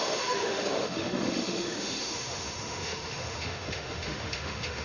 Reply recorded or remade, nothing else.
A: remade